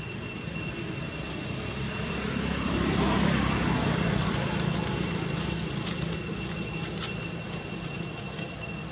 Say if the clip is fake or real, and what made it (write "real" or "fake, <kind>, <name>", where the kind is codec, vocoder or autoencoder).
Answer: fake, vocoder, BigVGAN v2